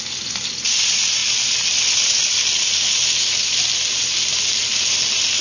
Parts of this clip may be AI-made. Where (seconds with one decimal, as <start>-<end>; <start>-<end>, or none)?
none